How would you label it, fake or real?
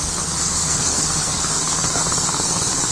fake